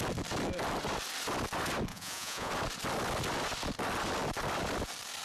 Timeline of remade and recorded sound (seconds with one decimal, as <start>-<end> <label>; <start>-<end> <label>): 0.0-1.9 recorded; 1.9-2.5 remade; 2.5-5.2 recorded